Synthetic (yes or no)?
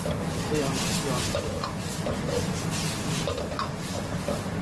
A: no